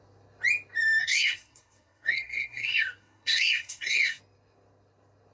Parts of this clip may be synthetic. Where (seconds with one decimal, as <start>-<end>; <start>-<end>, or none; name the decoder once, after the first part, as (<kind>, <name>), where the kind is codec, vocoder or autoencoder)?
1.0-4.2 (codec, SNAC)